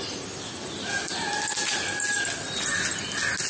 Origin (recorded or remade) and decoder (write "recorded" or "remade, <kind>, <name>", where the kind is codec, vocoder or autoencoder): recorded